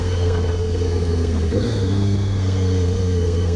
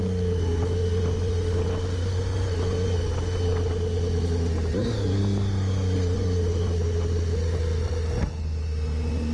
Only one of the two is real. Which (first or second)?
second